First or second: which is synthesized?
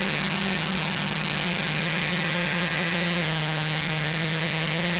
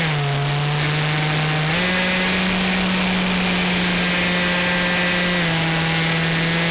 first